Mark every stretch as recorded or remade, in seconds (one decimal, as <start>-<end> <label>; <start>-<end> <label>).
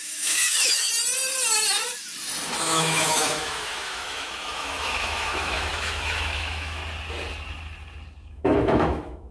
0.0-0.9 remade; 0.9-2.6 recorded; 2.6-6.8 remade; 6.8-8.3 recorded; 8.3-9.3 remade